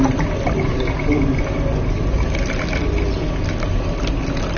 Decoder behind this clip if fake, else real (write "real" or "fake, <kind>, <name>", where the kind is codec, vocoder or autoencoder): real